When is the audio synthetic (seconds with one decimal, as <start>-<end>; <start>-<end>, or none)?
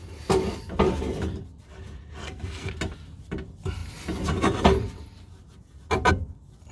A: 2.2-2.7